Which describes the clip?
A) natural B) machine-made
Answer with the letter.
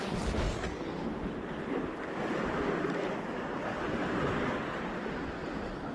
A